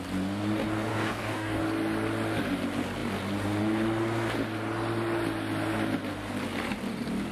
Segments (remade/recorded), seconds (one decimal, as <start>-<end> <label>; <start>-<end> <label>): 0.0-0.9 recorded; 0.9-1.6 remade; 1.6-7.3 recorded